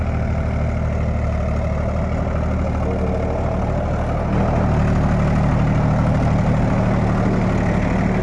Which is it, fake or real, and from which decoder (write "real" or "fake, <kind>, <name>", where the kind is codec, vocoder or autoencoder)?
real